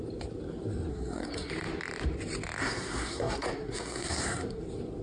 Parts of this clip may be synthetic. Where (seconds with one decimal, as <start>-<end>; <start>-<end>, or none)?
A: 0.9-1.5; 2.6-4.6

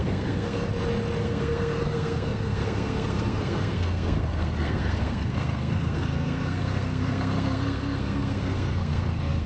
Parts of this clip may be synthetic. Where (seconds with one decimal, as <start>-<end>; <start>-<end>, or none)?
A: 0.0-0.7; 1.2-9.5